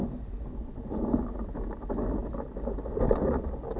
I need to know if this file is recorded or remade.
recorded